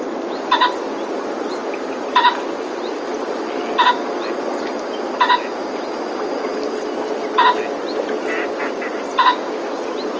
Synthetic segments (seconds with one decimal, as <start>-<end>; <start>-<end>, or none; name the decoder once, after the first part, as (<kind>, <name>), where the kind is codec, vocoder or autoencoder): none